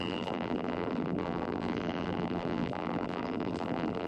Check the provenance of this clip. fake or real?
fake